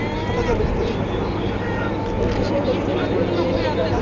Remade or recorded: recorded